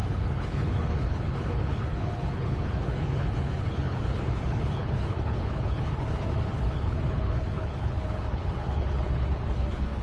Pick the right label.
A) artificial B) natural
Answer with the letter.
A